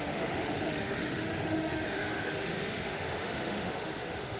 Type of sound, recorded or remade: remade